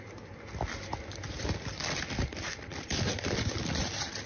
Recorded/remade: recorded